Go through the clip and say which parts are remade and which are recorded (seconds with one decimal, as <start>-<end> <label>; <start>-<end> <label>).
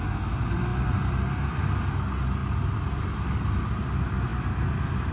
0.0-0.7 recorded; 0.7-1.6 remade; 1.6-2.4 recorded; 2.4-3.0 remade; 3.0-4.3 recorded; 4.3-5.1 remade